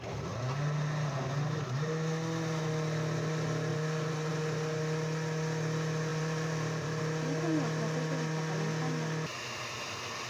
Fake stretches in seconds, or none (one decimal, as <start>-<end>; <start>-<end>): 3.7-4.3; 6.1-7.0; 9.3-10.3